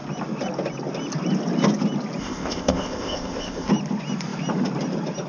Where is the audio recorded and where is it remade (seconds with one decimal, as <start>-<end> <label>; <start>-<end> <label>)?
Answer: 0.0-2.2 recorded; 2.2-3.7 remade; 3.7-5.3 recorded